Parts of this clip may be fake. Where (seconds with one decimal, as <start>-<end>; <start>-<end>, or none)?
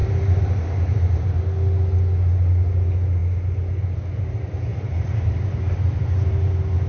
0.0-1.4; 4.7-6.5